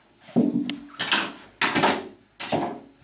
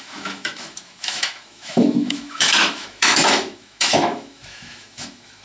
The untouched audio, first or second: first